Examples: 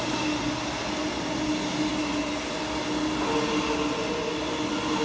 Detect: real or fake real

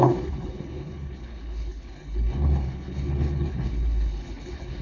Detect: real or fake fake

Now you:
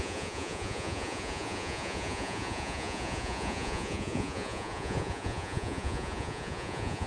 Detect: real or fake fake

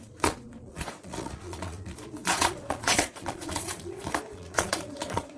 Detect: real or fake fake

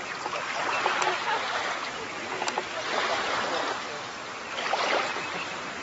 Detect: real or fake real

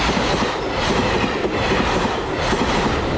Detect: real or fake real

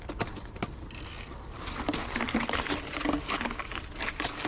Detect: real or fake real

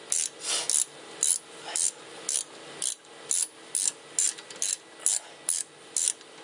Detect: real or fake real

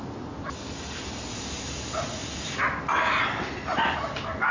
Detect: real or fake real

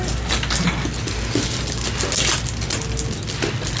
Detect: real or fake real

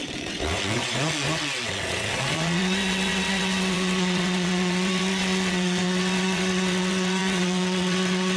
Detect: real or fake fake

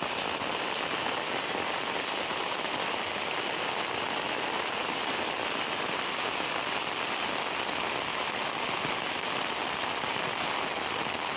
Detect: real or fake real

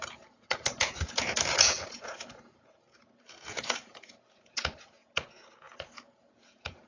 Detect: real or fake fake